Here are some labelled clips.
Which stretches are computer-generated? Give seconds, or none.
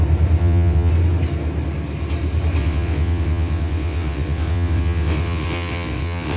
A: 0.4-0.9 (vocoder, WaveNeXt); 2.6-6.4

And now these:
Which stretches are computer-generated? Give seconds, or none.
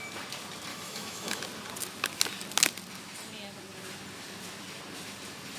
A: 0.7-1.4 (autoencoder, DAC-VAE)